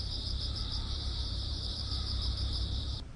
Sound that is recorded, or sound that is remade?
remade